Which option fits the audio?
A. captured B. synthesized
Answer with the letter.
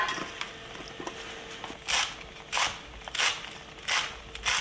A